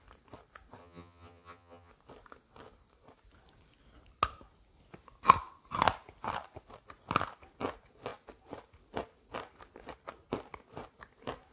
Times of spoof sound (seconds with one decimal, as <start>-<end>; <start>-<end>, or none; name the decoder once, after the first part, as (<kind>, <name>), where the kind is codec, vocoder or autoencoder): 0.8-1.9 (vocoder, HiFi-GAN)